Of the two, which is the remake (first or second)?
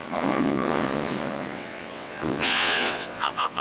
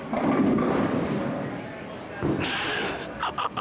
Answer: first